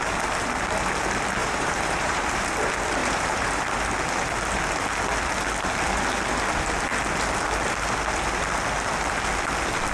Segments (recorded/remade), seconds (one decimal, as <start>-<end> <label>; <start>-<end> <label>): 0.0-1.4 recorded; 1.4-2.5 remade; 2.5-3.0 recorded; 3.0-3.6 remade; 3.6-9.9 recorded